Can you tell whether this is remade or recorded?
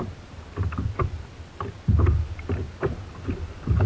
recorded